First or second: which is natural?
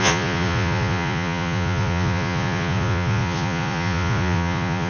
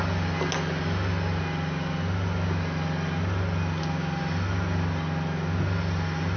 second